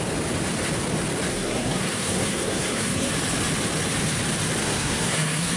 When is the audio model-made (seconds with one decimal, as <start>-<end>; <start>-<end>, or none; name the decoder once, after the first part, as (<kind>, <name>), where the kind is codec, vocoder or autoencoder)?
1.3-3.1 (codec, SNAC); 4.6-5.6